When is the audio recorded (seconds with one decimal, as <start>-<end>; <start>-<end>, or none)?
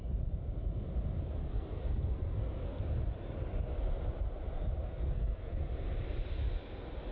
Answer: 0.0-1.4; 2.8-4.8; 5.6-7.1